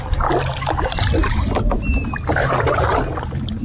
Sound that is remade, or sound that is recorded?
recorded